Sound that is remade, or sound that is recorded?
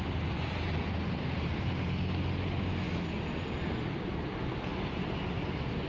recorded